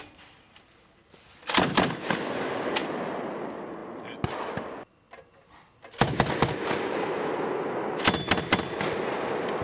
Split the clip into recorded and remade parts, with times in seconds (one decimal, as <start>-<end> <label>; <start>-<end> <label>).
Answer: 0.0-9.6 recorded